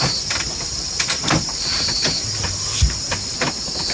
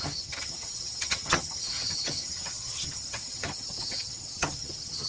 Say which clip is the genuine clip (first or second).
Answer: first